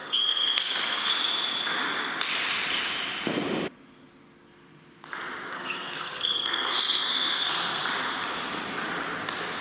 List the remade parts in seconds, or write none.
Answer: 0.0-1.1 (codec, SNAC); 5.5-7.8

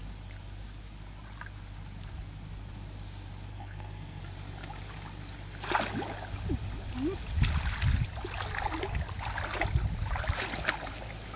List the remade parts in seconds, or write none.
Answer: 3.5-4.2 (codec, SNAC)

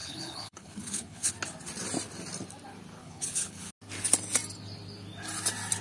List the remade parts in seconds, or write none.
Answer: 0.0-1.3 (codec, HILCodec); 3.0-3.7

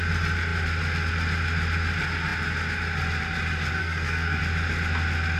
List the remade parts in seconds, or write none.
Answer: 3.8-4.4 (codec, SNAC)

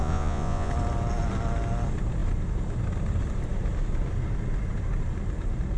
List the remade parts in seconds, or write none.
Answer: 0.0-0.7 (vocoder, Vocos)

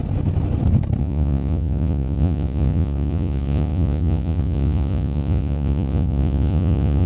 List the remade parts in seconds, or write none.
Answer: 1.0-7.1 (vocoder, Vocos)

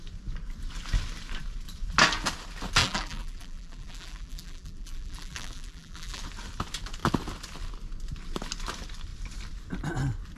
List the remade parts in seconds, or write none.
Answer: 2.8-6.2 (vocoder, BigVGAN v2)